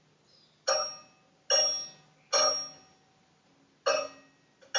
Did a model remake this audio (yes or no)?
no